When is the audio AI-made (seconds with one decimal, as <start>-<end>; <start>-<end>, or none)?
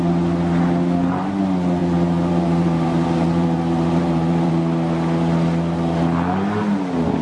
1.8-4.5